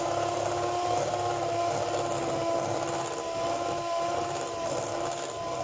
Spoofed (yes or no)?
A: no